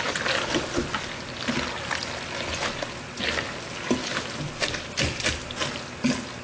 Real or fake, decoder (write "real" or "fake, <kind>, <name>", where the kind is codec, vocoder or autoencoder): real